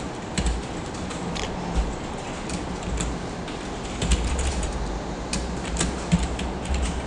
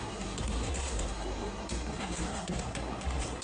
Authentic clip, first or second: first